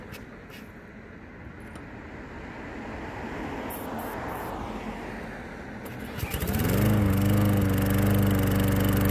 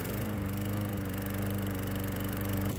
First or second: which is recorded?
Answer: first